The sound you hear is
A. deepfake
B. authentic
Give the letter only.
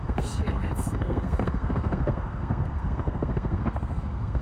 A